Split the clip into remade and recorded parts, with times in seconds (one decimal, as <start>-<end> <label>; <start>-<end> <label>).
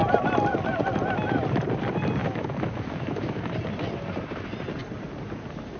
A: 0.0-2.2 recorded; 2.2-3.5 remade; 3.5-5.8 recorded